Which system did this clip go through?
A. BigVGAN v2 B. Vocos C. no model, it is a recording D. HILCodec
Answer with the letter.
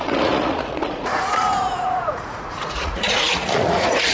B